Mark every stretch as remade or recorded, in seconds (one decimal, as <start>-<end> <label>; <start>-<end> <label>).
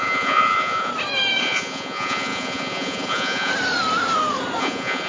0.0-0.9 remade; 0.9-1.4 recorded; 1.4-3.5 remade; 3.5-4.6 recorded; 4.6-5.1 remade